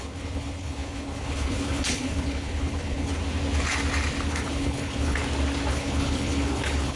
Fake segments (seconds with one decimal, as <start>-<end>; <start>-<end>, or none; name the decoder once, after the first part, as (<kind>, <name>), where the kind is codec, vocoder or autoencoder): 0.0-3.2 (codec, HILCodec); 4.3-5.2; 5.7-7.0